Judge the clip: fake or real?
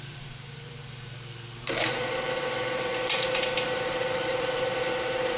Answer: fake